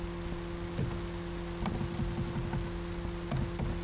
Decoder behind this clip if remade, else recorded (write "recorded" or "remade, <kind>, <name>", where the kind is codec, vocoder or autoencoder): recorded